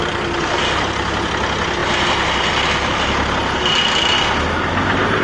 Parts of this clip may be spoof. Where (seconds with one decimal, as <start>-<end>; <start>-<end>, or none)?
none

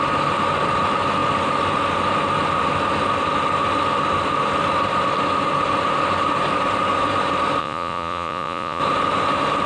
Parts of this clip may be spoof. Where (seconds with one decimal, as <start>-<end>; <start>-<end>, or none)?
7.6-8.8